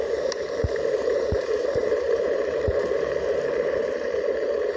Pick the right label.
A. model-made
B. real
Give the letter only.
A